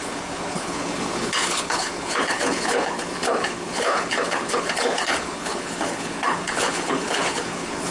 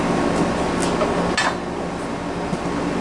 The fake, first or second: first